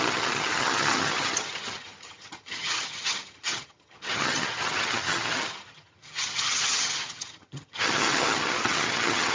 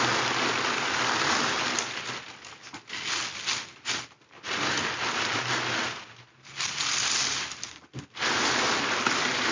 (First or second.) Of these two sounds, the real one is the second